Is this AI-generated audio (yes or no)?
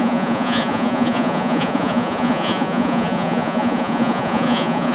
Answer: yes